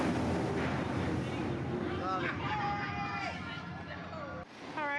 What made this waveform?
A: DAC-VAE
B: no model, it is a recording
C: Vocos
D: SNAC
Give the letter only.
B